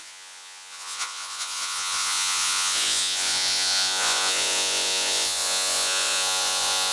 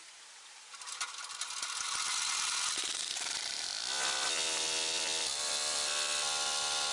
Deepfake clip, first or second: first